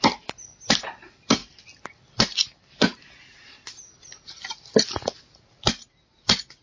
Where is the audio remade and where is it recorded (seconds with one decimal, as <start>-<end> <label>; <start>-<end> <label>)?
0.0-6.6 recorded